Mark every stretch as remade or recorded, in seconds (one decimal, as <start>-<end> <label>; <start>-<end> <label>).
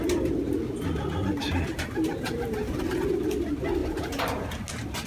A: 0.0-3.8 recorded; 3.8-4.5 remade; 4.5-5.1 recorded